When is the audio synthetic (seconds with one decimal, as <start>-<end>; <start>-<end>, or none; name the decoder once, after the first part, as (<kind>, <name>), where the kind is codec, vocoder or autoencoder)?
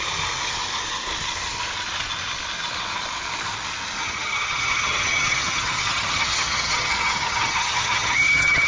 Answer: 4.0-8.7 (vocoder, HiFi-GAN)